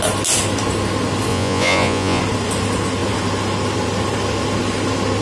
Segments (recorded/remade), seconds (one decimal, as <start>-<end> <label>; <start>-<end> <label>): 0.0-1.3 recorded; 1.3-2.2 remade; 2.2-5.2 recorded